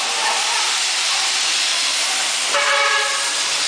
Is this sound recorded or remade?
recorded